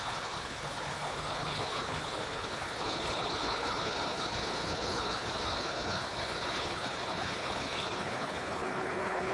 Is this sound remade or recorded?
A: remade